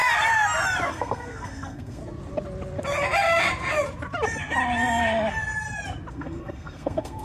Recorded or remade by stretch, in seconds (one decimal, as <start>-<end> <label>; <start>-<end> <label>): 0.0-0.9 recorded; 0.9-2.0 remade; 2.0-6.1 recorded; 6.1-7.2 remade